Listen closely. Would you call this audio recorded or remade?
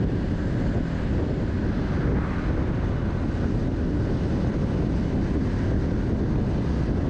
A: recorded